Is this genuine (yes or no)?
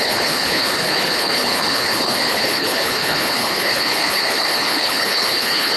no